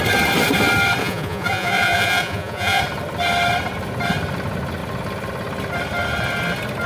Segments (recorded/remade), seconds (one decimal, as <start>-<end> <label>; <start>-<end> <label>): 0.0-1.0 recorded; 1.0-2.8 remade; 2.8-6.9 recorded